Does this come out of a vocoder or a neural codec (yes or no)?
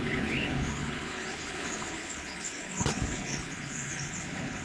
yes